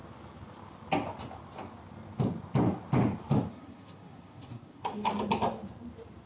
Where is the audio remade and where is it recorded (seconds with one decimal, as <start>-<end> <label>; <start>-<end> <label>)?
0.0-3.5 recorded; 3.5-5.1 remade; 5.1-6.3 recorded